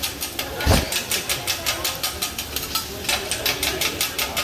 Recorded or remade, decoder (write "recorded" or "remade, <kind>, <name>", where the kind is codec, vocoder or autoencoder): recorded